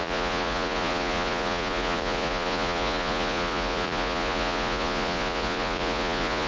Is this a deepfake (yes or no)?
yes